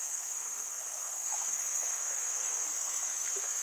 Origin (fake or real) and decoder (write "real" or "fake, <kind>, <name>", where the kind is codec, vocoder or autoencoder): fake, codec, SNAC